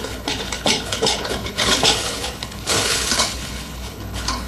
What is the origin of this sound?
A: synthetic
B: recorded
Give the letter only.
A